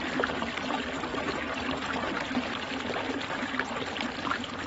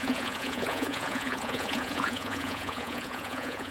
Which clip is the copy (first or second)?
second